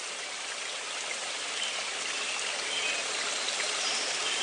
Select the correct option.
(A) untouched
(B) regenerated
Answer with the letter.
A